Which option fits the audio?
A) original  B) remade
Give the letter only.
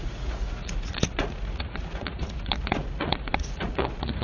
B